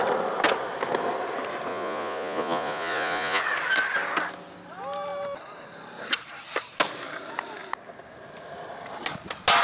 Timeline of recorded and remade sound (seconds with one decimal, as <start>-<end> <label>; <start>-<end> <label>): 0.0-1.7 recorded; 1.7-3.4 remade; 3.4-9.6 recorded